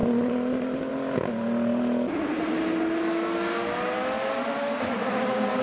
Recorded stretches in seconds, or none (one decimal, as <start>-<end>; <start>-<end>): 0.0-5.6